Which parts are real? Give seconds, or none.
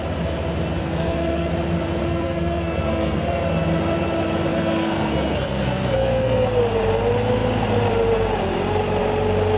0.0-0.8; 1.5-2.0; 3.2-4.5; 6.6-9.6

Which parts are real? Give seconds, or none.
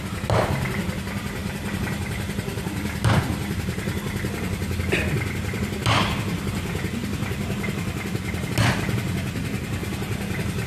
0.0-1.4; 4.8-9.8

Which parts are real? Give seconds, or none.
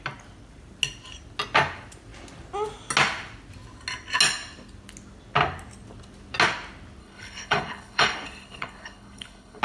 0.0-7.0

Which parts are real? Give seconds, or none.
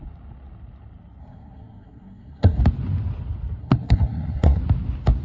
0.0-1.2; 2.6-3.6; 4.6-5.2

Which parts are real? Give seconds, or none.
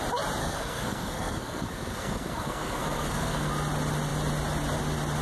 0.0-0.4; 3.5-5.2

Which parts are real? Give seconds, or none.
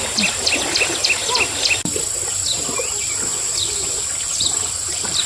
0.0-3.3; 4.0-5.3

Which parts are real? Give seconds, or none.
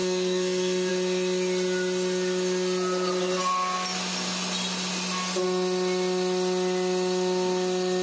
0.9-8.0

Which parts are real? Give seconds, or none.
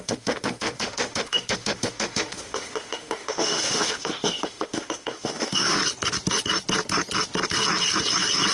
5.8-8.5